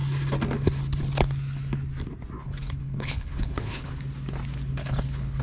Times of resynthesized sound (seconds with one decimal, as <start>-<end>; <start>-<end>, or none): 2.4-3.9; 4.8-5.4